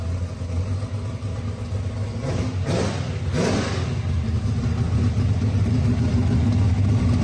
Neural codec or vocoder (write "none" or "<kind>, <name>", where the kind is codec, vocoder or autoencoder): none